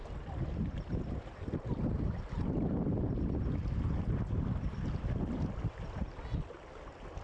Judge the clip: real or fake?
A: real